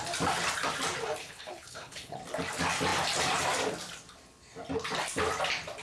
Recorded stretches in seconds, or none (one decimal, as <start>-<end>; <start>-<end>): 0.0-1.2; 2.2-5.8